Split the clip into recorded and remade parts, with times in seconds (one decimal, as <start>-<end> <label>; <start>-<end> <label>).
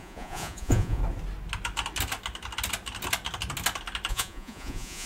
0.0-1.0 remade; 1.0-4.1 recorded; 4.1-5.1 remade